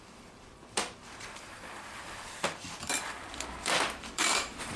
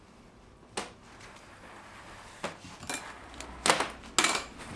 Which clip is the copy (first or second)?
first